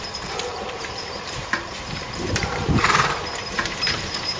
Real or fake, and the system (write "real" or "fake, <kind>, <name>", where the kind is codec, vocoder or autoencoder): fake, vocoder, BigVGAN v2